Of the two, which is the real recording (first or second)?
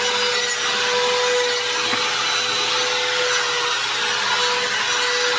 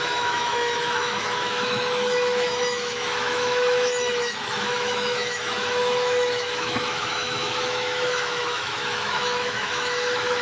first